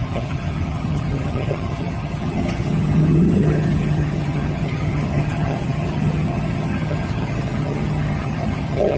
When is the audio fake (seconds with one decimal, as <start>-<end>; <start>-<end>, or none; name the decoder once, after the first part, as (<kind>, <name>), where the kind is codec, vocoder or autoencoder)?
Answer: 0.0-9.0 (vocoder, HiFi-GAN)